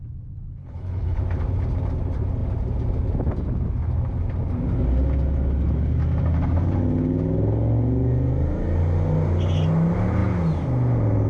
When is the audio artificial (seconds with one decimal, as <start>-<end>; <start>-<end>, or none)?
0.6-1.2